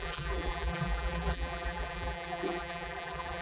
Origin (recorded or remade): remade